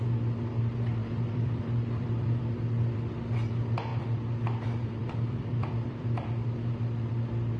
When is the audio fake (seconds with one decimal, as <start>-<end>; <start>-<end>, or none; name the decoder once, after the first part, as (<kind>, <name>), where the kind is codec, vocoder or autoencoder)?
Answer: 1.0-2.4 (vocoder, BigVGAN v2); 3.9-7.1